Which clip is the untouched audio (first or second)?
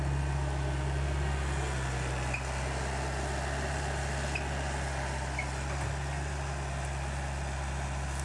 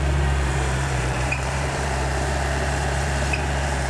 first